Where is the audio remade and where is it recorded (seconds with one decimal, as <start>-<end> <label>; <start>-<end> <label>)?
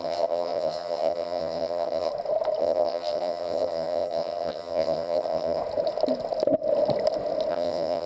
0.0-2.1 remade; 2.1-2.6 recorded; 2.6-5.6 remade; 5.6-7.5 recorded; 7.5-8.1 remade